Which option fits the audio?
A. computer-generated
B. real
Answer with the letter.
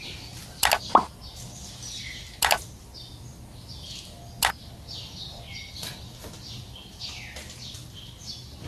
B